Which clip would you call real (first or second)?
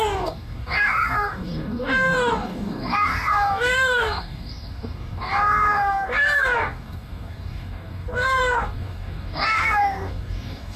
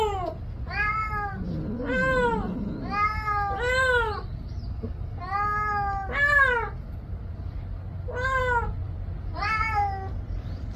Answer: second